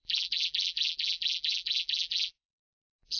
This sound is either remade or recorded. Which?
remade